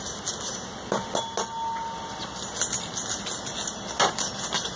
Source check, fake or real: real